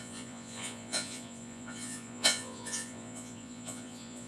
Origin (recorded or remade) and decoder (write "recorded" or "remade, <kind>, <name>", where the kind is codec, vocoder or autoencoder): remade, vocoder, Vocos